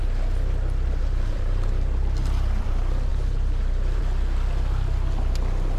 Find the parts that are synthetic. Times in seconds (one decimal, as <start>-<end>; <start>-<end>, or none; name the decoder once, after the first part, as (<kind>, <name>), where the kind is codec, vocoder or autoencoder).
1.0-2.7 (vocoder, BigVGAN v2); 3.1-4.0